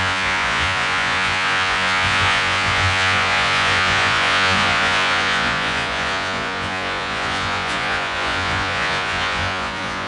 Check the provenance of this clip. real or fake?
fake